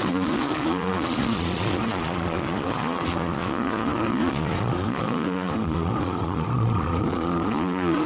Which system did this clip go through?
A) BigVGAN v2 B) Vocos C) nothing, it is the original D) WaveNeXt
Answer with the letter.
B